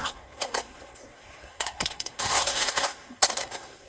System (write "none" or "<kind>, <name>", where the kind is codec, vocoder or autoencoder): codec, SNAC